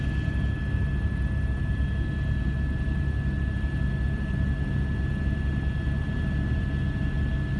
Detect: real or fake real